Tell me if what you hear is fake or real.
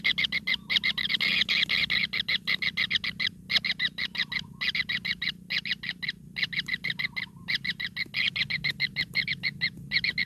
real